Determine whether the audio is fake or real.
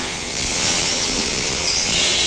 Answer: fake